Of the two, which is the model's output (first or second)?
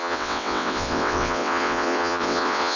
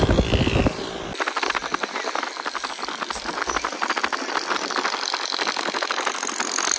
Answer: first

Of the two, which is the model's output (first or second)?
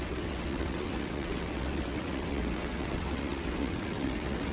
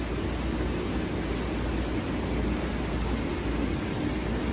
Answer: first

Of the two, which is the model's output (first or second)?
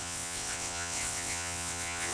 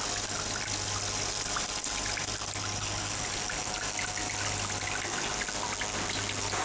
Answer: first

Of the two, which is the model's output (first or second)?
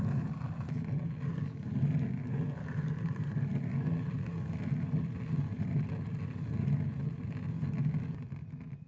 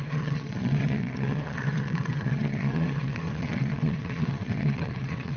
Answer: second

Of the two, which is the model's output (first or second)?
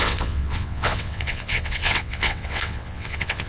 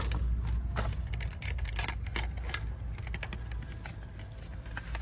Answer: first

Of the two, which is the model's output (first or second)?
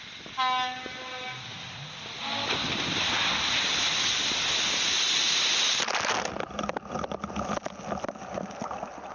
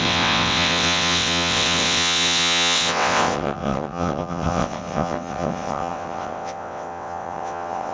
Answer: second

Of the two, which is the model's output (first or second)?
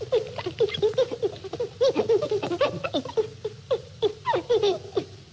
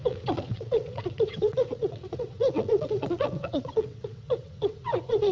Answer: second